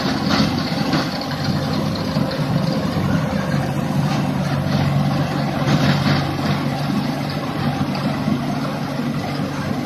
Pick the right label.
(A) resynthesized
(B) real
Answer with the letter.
B